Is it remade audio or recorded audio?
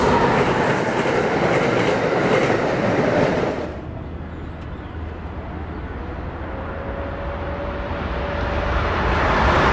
recorded